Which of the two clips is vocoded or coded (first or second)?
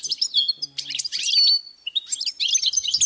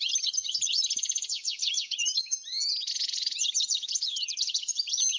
second